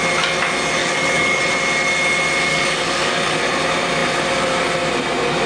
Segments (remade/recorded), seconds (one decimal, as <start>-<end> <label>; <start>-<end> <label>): 0.0-0.8 recorded; 0.8-1.4 remade; 1.4-2.5 recorded; 2.5-3.4 remade; 3.4-5.5 recorded